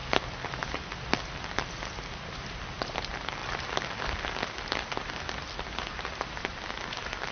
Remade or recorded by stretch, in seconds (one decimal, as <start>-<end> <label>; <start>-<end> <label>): 0.0-3.4 recorded; 3.4-7.3 remade

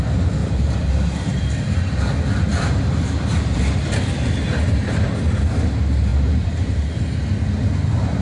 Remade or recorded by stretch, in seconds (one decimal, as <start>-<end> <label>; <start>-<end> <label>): 0.0-0.4 recorded; 0.4-0.9 remade; 0.9-2.5 recorded; 2.5-3.6 remade; 3.6-6.1 recorded; 6.1-7.0 remade; 7.0-8.2 recorded

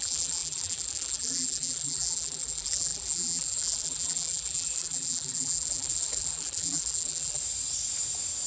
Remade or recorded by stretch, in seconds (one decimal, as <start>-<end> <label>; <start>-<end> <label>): 0.0-7.4 remade; 7.4-8.5 recorded